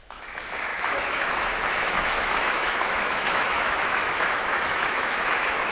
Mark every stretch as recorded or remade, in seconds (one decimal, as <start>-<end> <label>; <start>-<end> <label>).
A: 0.0-5.7 remade